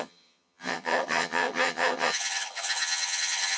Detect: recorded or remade remade